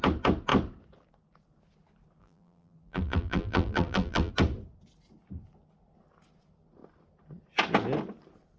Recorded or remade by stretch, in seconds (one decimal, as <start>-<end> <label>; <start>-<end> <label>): 0.0-2.2 recorded; 2.2-4.3 remade; 4.3-8.6 recorded